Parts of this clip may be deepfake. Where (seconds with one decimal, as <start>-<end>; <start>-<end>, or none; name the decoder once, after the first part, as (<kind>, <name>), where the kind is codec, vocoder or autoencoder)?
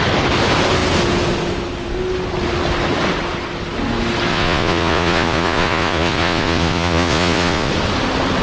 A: 4.3-7.7 (vocoder, Vocos)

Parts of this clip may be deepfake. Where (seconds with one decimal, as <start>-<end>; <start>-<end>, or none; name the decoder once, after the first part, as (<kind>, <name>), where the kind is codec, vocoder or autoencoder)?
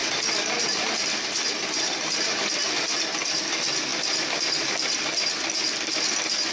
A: none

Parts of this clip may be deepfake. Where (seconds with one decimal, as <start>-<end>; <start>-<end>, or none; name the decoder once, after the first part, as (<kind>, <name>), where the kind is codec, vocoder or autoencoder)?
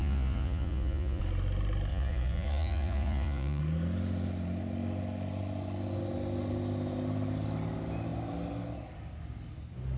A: 0.0-1.2 (vocoder, Vocos); 1.9-3.6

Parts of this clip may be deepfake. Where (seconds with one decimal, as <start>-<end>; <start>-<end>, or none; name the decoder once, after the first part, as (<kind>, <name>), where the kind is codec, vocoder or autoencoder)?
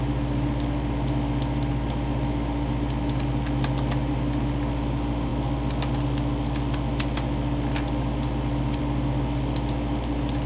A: none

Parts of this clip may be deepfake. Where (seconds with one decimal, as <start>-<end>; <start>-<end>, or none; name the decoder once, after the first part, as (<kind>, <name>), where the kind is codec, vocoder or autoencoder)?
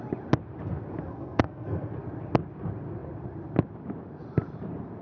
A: 1.1-1.9 (codec, SNAC)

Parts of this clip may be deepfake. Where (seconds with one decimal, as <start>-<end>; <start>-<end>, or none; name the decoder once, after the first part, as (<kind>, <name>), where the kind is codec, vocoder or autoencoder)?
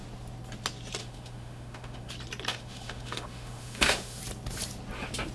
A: 1.0-2.1 (autoencoder, DAC-VAE); 2.5-4.2